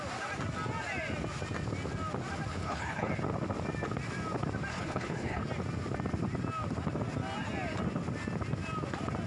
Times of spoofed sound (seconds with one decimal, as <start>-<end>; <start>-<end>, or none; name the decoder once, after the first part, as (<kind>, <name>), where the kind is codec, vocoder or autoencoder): 2.5-3.1 (codec, HILCodec); 4.7-5.4